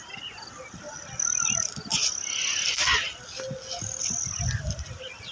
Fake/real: real